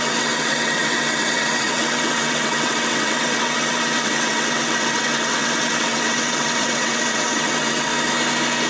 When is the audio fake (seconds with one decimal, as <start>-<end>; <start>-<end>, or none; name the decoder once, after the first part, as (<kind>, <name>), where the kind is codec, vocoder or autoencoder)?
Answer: 0.0-7.9 (vocoder, WaveNeXt)